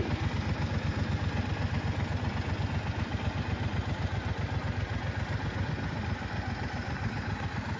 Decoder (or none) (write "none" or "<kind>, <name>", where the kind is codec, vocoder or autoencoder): none